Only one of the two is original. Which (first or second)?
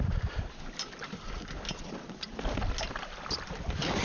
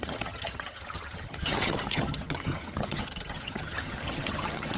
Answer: first